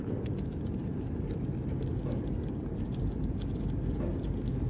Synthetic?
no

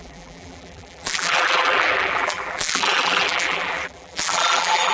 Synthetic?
yes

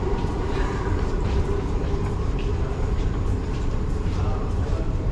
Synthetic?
yes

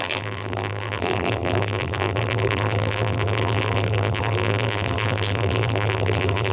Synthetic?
yes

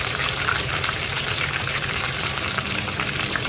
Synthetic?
yes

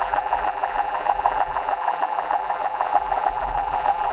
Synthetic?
yes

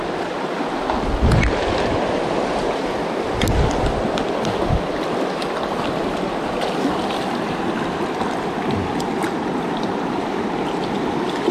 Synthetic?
no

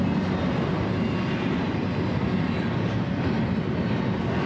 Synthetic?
no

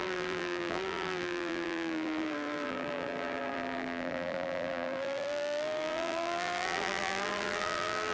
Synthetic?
yes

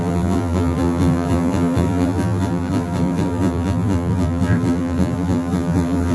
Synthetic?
yes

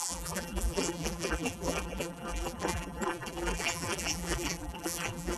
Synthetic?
yes